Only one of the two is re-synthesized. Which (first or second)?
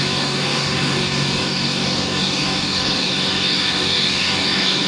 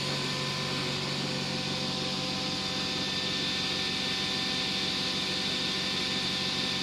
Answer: first